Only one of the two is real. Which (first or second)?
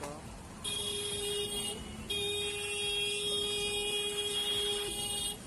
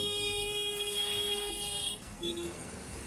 first